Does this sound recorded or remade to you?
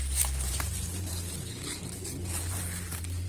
remade